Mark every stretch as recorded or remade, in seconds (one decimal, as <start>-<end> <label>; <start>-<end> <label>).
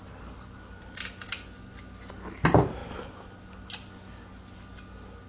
0.0-5.3 recorded